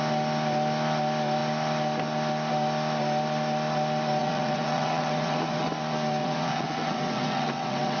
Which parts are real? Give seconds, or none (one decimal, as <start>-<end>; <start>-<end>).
0.0-4.2; 5.7-6.2